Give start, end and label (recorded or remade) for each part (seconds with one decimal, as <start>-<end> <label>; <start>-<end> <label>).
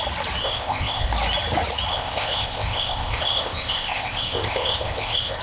0.0-0.4 recorded; 0.4-1.1 remade; 1.1-1.9 recorded; 1.9-5.4 remade